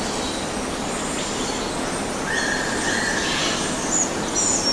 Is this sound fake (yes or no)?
no